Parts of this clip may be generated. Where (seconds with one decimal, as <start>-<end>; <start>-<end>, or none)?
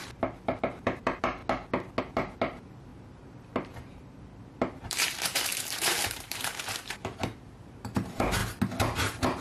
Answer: 0.0-1.4; 2.0-8.4